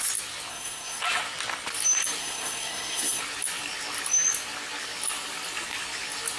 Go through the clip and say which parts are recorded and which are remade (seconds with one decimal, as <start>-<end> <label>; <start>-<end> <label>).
0.0-0.5 recorded; 0.5-1.0 remade; 1.0-2.2 recorded; 2.2-3.2 remade; 3.2-6.4 recorded

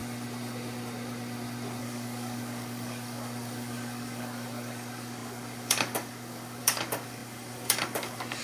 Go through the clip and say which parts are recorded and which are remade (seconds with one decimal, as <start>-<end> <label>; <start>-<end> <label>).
0.0-1.8 recorded; 1.8-8.4 remade

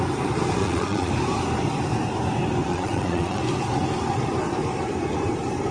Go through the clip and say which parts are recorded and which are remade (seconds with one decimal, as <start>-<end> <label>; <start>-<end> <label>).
0.0-0.6 recorded; 0.6-1.1 remade; 1.1-2.7 recorded; 2.7-3.4 remade; 3.4-5.7 recorded

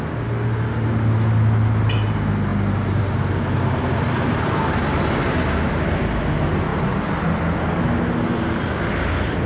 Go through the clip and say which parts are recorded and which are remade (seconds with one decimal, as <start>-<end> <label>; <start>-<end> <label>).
0.0-9.5 recorded

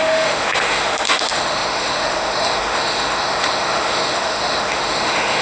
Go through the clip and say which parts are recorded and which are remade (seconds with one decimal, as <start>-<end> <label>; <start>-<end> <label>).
0.0-5.4 remade

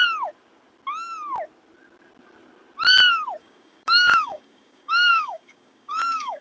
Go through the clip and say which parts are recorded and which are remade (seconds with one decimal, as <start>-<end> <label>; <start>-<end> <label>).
0.0-3.4 recorded; 3.4-6.4 remade

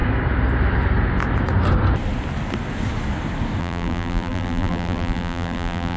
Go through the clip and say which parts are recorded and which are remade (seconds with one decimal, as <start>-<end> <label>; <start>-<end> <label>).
0.0-3.6 recorded; 3.6-6.0 remade

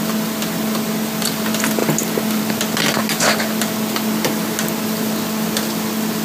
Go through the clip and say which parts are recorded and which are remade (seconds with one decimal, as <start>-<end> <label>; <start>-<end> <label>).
0.0-6.2 recorded